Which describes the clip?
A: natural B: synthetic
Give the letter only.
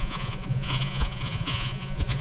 B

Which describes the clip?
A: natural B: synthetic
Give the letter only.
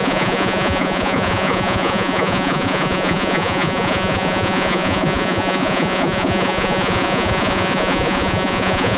B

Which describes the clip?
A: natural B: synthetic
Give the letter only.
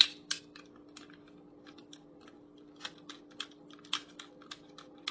A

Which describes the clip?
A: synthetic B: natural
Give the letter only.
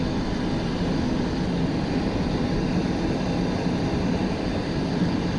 B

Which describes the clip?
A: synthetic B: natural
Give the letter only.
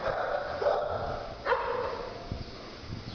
B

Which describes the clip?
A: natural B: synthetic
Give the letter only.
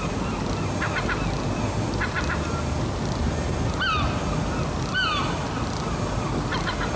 A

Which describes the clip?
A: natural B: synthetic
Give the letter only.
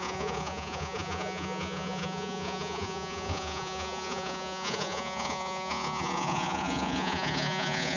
B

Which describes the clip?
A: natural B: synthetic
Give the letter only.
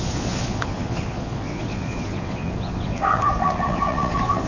B